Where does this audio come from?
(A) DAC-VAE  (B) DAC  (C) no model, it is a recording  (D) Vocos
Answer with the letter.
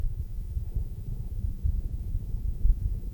D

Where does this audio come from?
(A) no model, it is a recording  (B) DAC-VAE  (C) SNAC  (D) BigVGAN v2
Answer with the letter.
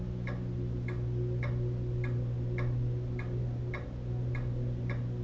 A